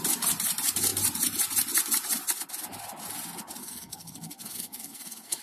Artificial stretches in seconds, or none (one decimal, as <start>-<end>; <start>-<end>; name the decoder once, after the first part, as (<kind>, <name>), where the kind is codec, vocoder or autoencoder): 3.6-5.4 (codec, SNAC)